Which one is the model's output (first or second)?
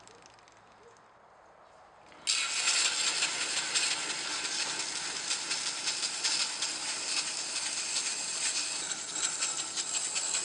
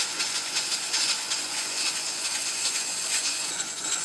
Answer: second